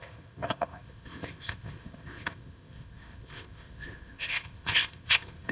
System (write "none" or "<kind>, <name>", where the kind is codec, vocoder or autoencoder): codec, ZipCodec